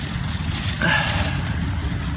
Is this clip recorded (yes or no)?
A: yes